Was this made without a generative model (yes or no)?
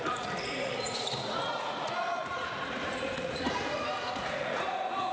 no